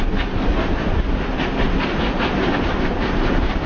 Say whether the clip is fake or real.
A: real